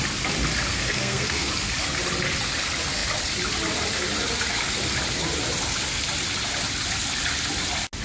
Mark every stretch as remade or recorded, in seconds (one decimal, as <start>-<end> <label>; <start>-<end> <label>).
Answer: 0.0-0.7 recorded; 0.7-1.5 remade; 1.5-8.0 recorded